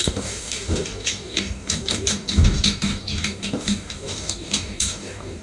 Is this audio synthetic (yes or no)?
yes